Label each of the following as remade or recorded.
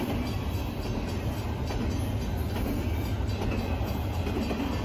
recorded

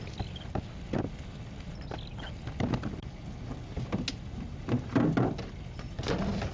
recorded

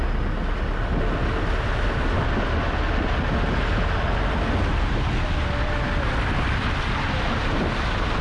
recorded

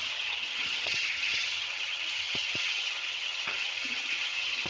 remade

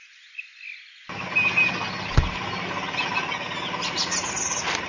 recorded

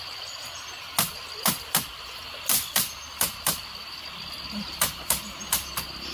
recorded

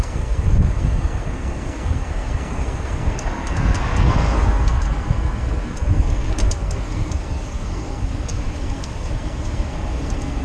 remade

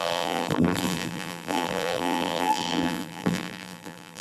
remade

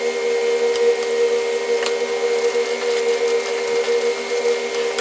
recorded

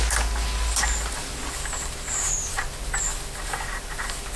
recorded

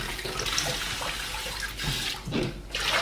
recorded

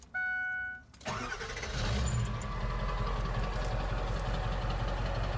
recorded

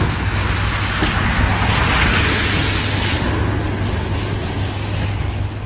recorded